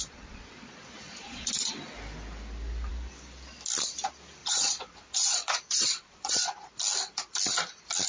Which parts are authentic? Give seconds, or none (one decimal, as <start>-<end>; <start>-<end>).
1.5-4.4; 6.7-8.1

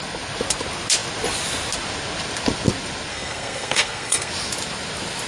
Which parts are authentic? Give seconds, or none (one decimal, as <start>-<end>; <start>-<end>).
0.0-3.1; 4.3-5.3

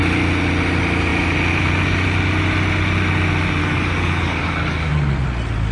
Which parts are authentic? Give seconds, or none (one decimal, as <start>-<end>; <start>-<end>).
0.0-3.6; 4.9-5.7

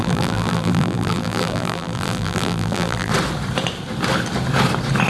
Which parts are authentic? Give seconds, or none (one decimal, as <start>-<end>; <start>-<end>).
3.1-5.1

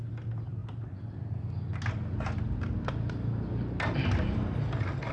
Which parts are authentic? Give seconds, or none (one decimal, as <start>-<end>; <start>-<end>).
0.0-5.1